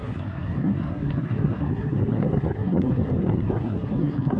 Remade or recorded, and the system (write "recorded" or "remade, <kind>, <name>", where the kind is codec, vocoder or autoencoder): remade, codec, SNAC